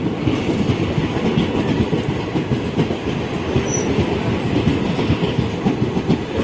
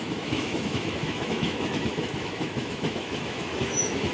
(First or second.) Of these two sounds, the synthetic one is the second